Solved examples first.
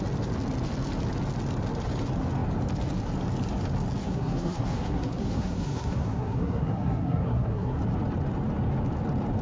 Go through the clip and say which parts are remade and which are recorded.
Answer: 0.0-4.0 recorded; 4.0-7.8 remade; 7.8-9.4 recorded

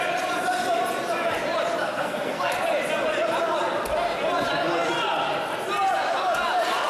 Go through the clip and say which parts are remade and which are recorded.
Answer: 0.0-1.8 recorded; 1.8-2.5 remade; 2.5-6.9 recorded

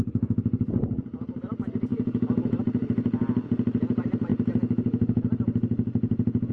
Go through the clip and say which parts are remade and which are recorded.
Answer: 0.0-1.9 recorded; 1.9-2.6 remade; 2.6-6.5 recorded

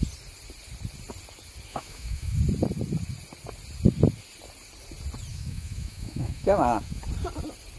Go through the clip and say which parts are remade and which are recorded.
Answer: 0.0-1.7 recorded; 1.7-2.4 remade; 2.4-5.3 recorded; 5.3-7.0 remade; 7.0-7.8 recorded

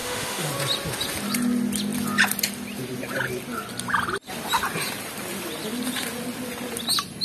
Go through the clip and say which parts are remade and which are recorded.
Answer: 0.0-0.5 remade; 0.5-7.2 recorded

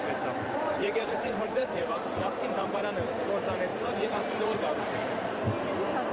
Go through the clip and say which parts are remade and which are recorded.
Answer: 0.0-0.8 recorded; 0.8-2.8 remade; 2.8-3.7 recorded; 3.7-5.4 remade; 5.4-6.1 recorded

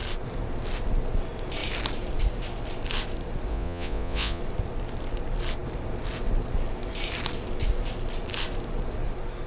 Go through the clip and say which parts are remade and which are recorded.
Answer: 0.0-3.5 recorded; 3.5-4.4 remade; 4.4-9.5 recorded